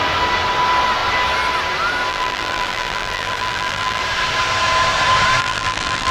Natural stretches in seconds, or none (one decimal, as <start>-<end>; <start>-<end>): 0.0-2.1; 4.0-5.4